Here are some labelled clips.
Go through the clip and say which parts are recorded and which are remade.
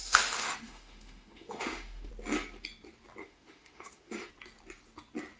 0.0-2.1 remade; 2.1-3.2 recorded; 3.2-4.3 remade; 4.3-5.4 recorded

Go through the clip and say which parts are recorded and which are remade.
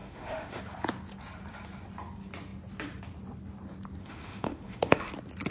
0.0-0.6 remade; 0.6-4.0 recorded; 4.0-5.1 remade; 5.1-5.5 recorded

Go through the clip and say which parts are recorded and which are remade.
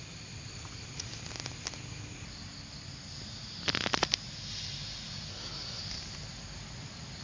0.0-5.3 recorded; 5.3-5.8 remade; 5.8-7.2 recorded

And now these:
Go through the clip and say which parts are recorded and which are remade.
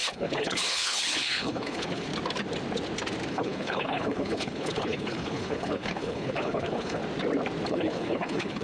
0.0-2.1 remade; 2.1-3.3 recorded; 3.3-7.0 remade; 7.0-7.7 recorded; 7.7-8.6 remade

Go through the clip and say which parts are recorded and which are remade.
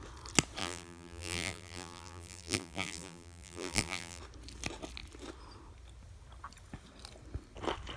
0.0-0.6 recorded; 0.6-4.2 remade; 4.2-8.0 recorded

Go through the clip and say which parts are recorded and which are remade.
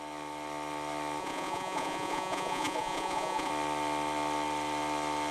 0.0-1.2 recorded; 1.2-3.5 remade; 3.5-5.3 recorded